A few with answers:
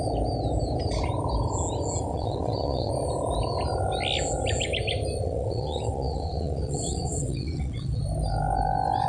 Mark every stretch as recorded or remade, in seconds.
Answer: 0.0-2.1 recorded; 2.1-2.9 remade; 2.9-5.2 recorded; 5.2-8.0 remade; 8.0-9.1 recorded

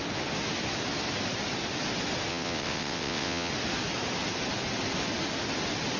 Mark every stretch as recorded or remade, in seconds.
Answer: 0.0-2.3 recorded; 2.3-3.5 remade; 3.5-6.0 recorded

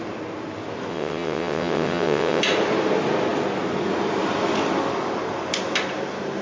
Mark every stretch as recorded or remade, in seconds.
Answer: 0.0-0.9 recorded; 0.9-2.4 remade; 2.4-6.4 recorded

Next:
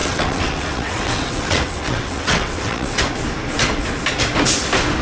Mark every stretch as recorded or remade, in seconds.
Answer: 0.0-3.0 remade; 3.0-5.0 recorded

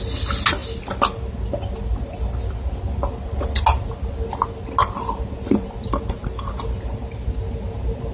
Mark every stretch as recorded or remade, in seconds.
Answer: 0.0-8.1 recorded